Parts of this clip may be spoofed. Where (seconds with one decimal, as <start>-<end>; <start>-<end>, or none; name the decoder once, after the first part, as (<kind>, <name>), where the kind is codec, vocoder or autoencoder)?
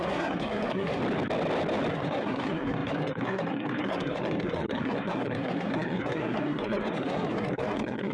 0.0-1.0 (codec, SNAC); 1.9-8.1